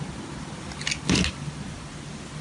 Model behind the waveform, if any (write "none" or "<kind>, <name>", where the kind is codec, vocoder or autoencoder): none